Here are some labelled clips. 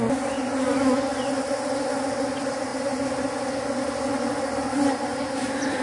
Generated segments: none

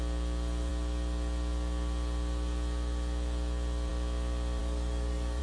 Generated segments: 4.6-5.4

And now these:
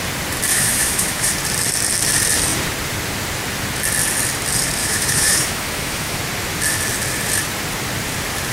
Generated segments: 0.5-1.3; 4.8-6.2